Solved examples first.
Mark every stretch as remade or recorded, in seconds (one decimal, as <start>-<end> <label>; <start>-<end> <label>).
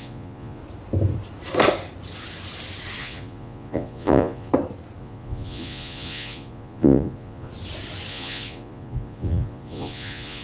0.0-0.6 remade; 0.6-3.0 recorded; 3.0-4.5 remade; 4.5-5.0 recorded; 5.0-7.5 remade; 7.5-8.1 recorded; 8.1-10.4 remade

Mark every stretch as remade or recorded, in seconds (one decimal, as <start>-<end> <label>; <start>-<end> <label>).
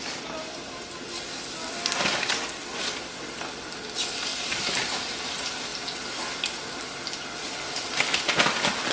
0.0-4.3 recorded; 4.3-5.0 remade; 5.0-5.7 recorded; 5.7-6.2 remade; 6.2-8.9 recorded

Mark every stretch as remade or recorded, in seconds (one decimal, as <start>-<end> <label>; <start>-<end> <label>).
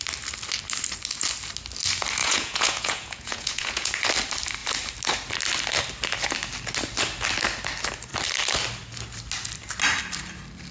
0.0-2.2 recorded; 2.2-3.9 remade; 3.9-10.7 recorded